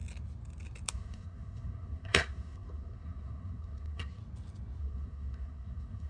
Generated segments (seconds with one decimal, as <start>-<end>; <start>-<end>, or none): 0.9-4.2; 4.8-6.1